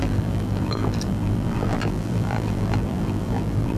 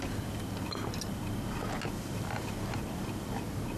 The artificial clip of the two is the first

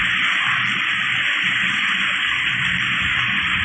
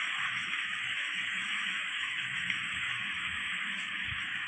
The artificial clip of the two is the second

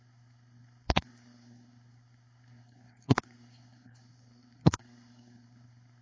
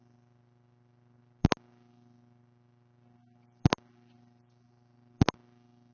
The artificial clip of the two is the first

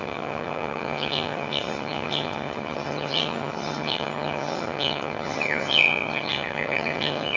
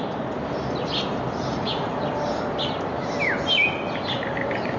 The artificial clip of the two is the first